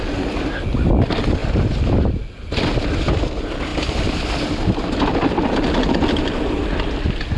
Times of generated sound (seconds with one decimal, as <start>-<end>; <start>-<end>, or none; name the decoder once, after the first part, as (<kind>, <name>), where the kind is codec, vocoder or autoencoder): none